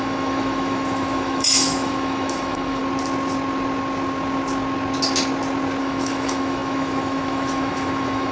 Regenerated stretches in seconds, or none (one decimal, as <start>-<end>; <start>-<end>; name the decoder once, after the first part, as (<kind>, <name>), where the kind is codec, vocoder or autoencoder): 0.0-2.8 (autoencoder, DAC-VAE); 5.8-8.3